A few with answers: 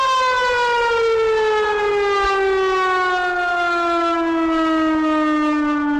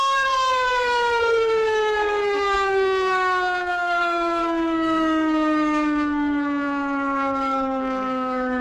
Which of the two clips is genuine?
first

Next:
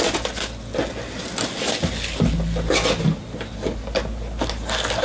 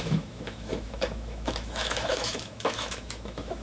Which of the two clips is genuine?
first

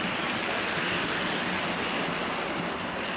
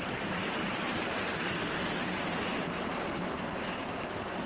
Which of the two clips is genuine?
first